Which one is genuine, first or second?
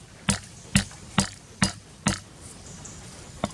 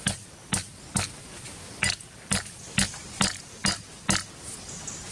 second